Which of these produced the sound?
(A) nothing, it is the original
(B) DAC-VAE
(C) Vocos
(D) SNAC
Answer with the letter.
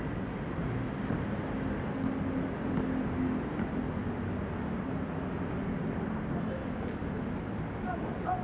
A